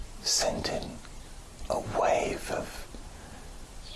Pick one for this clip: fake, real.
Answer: fake